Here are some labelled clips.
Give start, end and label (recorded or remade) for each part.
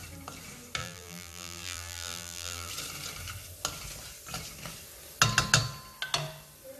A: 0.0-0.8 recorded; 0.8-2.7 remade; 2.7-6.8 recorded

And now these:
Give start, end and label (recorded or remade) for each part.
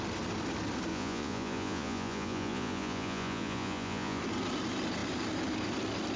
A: 0.0-0.9 recorded; 0.9-4.2 remade; 4.2-6.2 recorded